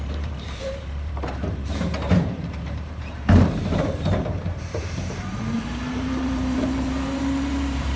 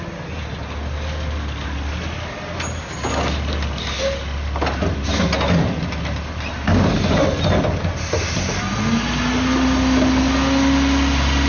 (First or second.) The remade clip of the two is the first